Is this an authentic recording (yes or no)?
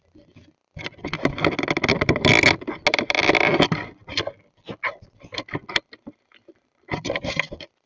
yes